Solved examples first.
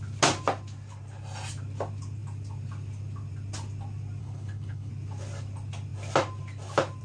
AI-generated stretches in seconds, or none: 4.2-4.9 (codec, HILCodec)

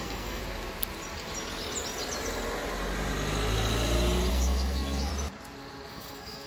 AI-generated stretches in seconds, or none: 0.0-0.4 (codec, SNAC); 4.3-5.1; 5.9-6.5

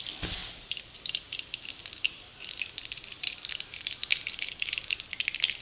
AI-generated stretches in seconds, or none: 0.4-0.9 (vocoder, BigVGAN v2); 2.3-3.7

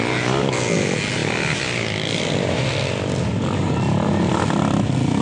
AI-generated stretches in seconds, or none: none

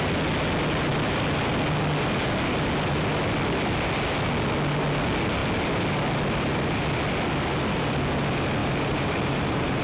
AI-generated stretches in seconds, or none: 8.6-9.8 (vocoder, BigVGAN v2)

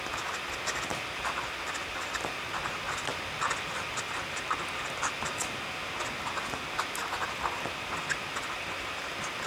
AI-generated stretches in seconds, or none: none

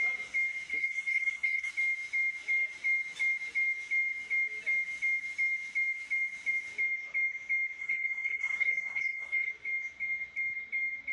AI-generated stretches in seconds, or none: 0.7-1.7 (codec, SNAC); 7.8-9.5